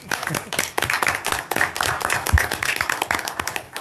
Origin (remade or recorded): remade